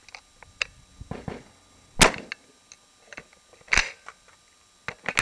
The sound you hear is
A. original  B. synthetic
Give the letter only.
A